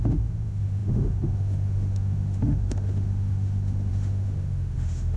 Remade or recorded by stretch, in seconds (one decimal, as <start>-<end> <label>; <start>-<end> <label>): 0.0-5.2 remade